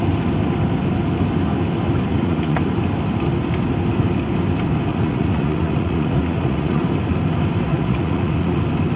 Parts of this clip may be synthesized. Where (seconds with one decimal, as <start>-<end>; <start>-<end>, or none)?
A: 2.1-2.6; 4.9-6.8; 7.7-8.6